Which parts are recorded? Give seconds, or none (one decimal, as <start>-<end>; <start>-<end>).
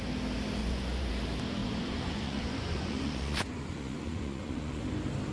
0.0-0.6; 1.1-1.6; 4.8-5.3